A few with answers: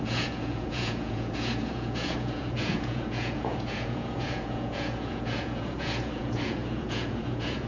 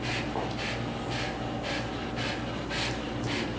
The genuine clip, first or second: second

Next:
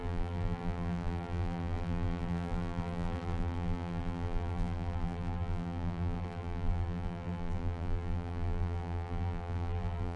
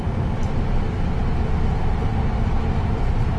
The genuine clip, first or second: second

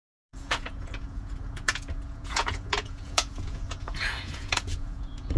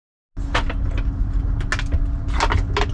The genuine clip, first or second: second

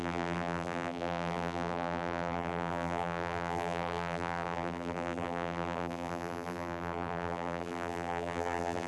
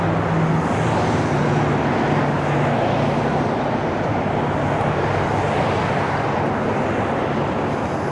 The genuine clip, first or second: second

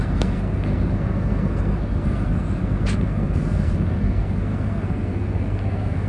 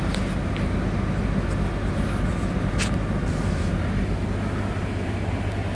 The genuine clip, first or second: second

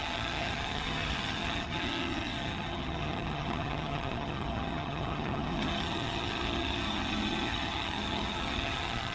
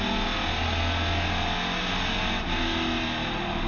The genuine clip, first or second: second